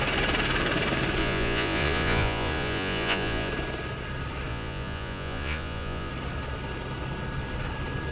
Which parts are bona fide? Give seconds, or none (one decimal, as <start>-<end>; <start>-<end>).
0.0-1.2; 3.5-4.5; 6.1-8.1